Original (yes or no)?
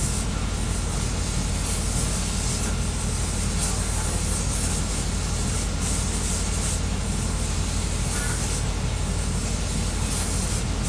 yes